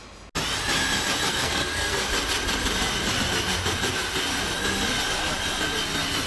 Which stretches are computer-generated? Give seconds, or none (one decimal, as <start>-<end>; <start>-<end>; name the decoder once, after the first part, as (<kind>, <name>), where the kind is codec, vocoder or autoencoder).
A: 1.3-2.1 (codec, SNAC)